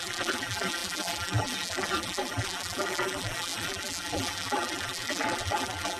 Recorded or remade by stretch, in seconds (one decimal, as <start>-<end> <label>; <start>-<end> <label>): 0.0-6.0 remade